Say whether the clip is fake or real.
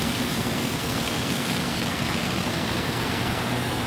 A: fake